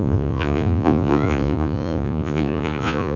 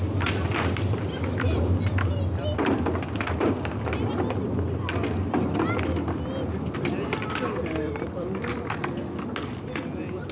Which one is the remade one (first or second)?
first